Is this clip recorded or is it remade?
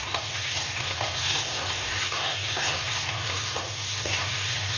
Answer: remade